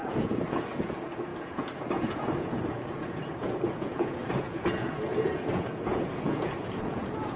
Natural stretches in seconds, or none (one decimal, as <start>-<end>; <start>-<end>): none